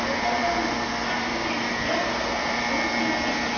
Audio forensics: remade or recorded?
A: recorded